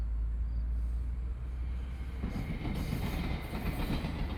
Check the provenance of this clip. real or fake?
real